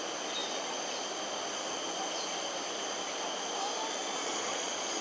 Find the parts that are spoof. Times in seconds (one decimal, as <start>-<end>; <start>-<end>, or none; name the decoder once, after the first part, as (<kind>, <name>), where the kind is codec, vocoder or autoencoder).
4.0-5.0 (vocoder, Vocos)

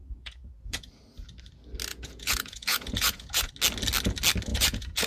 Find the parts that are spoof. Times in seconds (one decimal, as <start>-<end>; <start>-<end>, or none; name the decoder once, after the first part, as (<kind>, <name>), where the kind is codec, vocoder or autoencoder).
0.0-0.9 (vocoder, Vocos); 1.9-3.5; 4.5-5.1

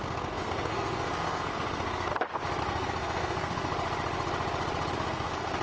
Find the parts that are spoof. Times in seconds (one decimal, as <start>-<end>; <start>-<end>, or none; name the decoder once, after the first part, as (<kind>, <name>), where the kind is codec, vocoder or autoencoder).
0.0-2.1 (codec, SNAC); 2.6-3.7; 4.9-5.6

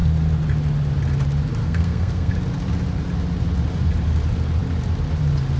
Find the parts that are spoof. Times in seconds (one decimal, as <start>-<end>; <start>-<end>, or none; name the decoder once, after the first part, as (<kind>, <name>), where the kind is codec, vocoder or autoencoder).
1.6-2.3 (codec, SNAC)